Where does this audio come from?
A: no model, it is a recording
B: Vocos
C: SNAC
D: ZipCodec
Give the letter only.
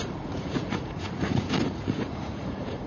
B